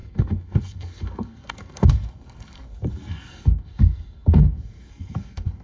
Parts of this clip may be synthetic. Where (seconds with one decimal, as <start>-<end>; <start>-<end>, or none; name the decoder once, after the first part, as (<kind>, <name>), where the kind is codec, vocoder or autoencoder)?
0.0-5.6 (codec, SNAC)

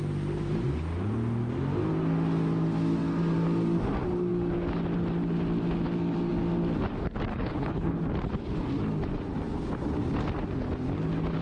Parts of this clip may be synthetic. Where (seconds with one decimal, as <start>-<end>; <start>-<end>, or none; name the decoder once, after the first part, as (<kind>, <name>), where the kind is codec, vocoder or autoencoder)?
7.3-8.0 (codec, HILCodec)